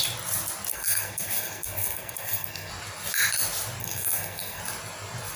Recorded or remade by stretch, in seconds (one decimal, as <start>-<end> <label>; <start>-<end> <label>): 0.0-0.7 recorded; 0.7-2.7 remade; 2.7-3.8 recorded; 3.8-4.6 remade; 4.6-5.4 recorded